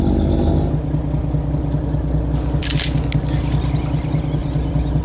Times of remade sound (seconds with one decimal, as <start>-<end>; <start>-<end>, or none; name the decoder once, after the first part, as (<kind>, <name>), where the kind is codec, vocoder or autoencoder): 4.4-5.0 (vocoder, BigVGAN v2)